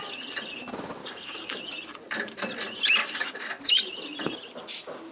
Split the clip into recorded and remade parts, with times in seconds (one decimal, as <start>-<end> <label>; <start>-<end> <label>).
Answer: 0.0-1.0 recorded; 1.0-1.6 remade; 1.6-3.0 recorded; 3.0-3.6 remade; 3.6-5.1 recorded